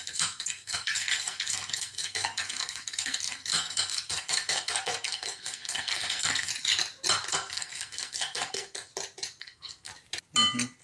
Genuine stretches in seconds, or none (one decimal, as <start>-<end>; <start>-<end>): 6.5-7.3; 8.9-9.4; 9.9-10.8